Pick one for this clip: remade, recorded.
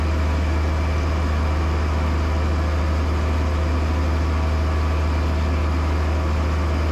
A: recorded